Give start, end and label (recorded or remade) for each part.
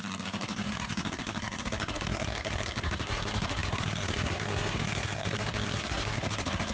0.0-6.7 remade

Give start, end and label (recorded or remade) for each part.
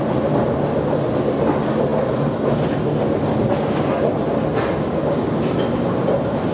0.0-6.5 recorded